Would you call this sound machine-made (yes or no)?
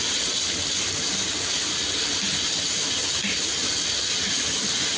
no